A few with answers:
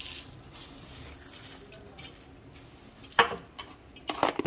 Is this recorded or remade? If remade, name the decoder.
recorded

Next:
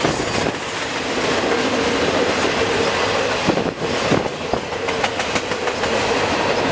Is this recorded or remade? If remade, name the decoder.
recorded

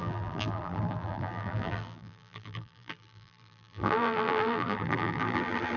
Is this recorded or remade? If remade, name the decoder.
remade, vocoder, BigVGAN v2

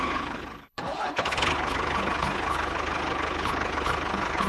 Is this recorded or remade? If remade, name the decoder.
remade, codec, HILCodec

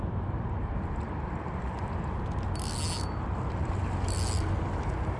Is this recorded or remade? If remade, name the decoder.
recorded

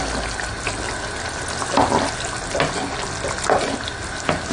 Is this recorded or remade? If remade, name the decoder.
recorded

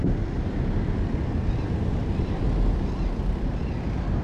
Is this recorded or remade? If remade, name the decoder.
recorded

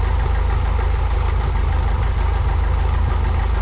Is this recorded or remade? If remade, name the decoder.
recorded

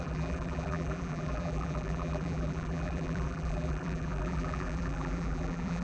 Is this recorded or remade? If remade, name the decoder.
remade, vocoder, BigVGAN v2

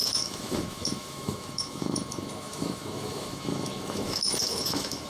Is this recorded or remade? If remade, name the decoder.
remade, autoencoder, DAC-VAE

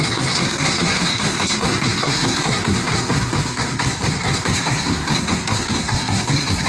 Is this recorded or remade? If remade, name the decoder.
remade, codec, SNAC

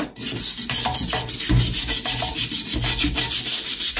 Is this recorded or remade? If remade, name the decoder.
recorded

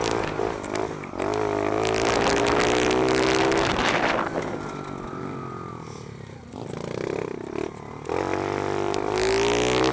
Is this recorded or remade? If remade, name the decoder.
recorded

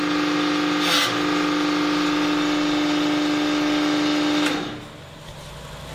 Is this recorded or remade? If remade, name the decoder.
recorded